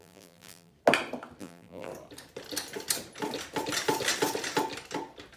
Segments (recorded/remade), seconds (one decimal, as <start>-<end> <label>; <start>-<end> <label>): 0.0-0.7 remade; 0.7-1.4 recorded; 1.4-1.9 remade; 1.9-5.4 recorded